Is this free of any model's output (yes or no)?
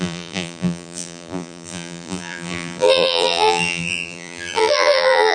no